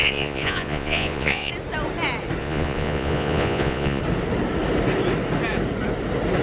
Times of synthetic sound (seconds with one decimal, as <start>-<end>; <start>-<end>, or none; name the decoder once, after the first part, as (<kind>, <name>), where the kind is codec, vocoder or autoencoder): 0.0-1.5 (vocoder, Vocos); 2.4-4.0